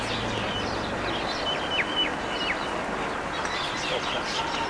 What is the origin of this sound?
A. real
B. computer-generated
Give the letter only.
A